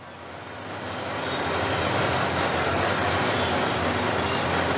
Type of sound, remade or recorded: recorded